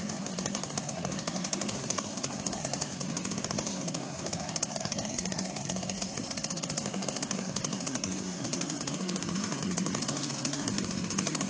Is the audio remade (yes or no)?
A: yes